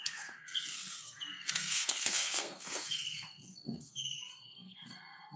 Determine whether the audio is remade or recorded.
remade